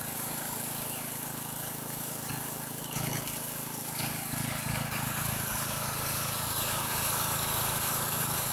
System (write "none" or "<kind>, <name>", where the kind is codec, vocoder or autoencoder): codec, DAC